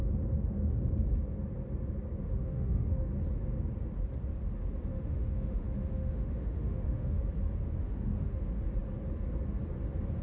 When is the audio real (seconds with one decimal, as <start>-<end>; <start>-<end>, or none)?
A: 0.0-2.2; 3.1-4.9; 7.2-7.8; 8.4-10.2